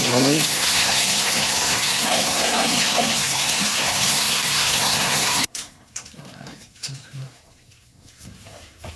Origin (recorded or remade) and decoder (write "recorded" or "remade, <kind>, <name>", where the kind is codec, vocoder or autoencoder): remade, codec, SNAC